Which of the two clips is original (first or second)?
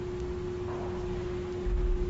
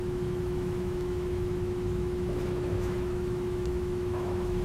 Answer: first